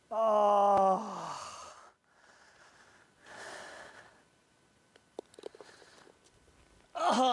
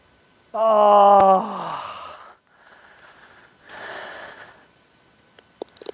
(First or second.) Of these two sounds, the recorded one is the first